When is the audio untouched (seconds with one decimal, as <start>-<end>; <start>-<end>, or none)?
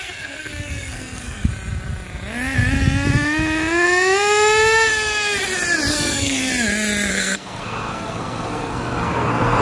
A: 1.5-5.9; 6.5-7.1